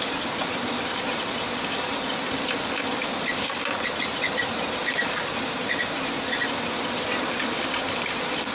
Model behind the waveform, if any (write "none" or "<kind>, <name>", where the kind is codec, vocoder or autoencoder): none